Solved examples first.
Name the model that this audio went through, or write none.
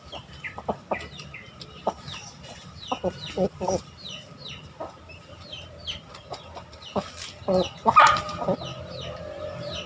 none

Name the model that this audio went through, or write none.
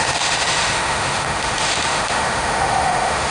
autoencoder, DAC-VAE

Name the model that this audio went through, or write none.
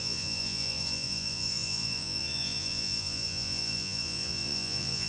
vocoder, Vocos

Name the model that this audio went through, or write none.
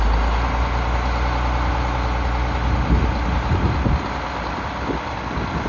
none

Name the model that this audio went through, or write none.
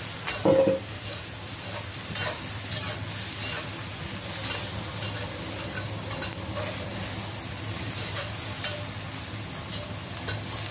none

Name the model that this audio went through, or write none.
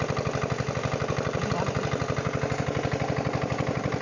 none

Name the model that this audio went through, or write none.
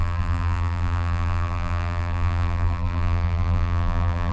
vocoder, BigVGAN v2